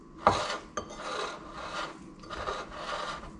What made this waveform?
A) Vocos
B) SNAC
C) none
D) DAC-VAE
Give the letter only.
C